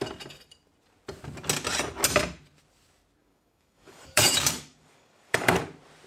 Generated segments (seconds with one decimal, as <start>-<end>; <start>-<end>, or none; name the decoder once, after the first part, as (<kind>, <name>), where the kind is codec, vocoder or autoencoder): 3.2-5.6 (codec, DAC)

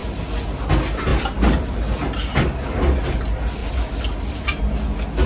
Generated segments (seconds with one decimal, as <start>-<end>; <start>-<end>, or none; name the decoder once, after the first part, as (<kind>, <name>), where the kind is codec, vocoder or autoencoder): none

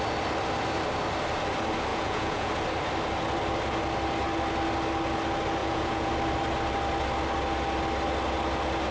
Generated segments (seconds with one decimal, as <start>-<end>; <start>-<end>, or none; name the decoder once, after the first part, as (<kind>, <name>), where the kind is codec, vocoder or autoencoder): 1.9-2.5 (vocoder, Vocos); 5.6-6.1

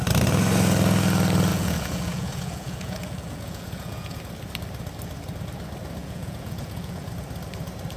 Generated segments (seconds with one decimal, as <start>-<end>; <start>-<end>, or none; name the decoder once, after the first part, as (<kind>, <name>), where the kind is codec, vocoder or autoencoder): 1.5-4.2 (vocoder, Vocos); 6.0-7.1

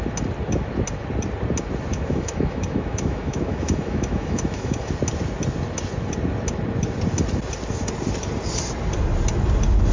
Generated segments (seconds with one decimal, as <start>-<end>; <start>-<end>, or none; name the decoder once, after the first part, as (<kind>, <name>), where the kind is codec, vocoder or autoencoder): 1.9-4.9 (autoencoder, DAC-VAE)

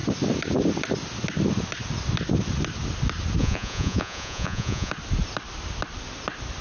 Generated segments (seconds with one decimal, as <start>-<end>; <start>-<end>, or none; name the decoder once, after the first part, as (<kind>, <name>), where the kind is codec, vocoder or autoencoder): 3.4-4.9 (vocoder, Vocos)

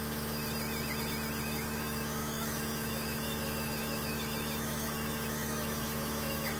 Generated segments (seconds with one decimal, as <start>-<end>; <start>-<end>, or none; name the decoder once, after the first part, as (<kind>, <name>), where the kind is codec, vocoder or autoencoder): 0.0-0.4 (autoencoder, DAC-VAE); 1.4-6.6

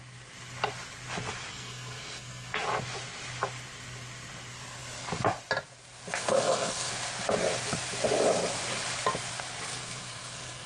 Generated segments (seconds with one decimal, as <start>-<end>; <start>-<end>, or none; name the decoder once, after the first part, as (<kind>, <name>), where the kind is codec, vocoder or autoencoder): 1.5-2.6 (codec, SNAC); 6.2-6.9; 9.7-10.7